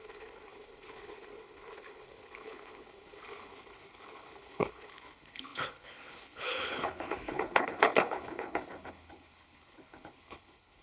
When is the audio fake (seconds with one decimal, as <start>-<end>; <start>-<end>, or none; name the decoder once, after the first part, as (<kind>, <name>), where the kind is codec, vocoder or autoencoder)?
0.0-10.8 (codec, HILCodec)